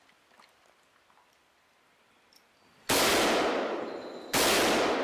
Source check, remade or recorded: recorded